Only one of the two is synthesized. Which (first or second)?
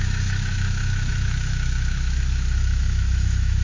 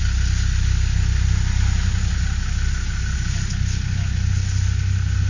first